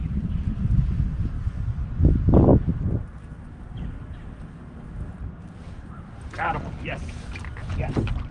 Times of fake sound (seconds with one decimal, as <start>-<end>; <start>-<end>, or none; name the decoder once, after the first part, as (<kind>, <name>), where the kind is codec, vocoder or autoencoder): none